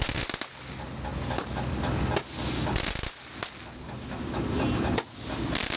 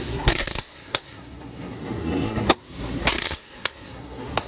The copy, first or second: second